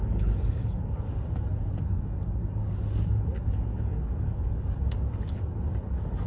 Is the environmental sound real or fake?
fake